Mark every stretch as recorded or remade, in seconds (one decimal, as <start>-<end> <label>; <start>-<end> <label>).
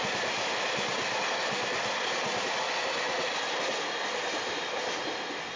0.0-5.6 recorded